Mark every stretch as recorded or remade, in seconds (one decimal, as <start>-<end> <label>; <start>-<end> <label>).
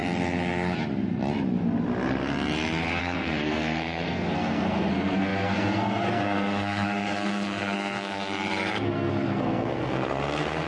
0.0-3.0 recorded; 3.0-10.7 remade